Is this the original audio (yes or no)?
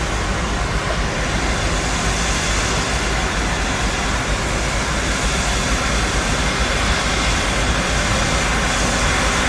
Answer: yes